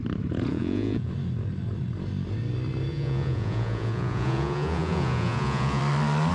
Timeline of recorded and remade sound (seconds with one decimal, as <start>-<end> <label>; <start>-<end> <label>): 0.0-0.5 recorded; 0.5-1.1 remade; 1.1-2.9 recorded; 2.9-5.8 remade; 5.8-6.3 recorded